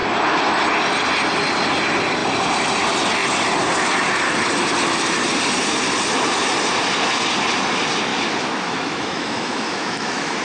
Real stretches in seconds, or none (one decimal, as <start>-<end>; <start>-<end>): 0.0-8.1